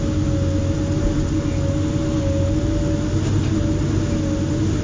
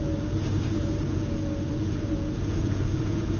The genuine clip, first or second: first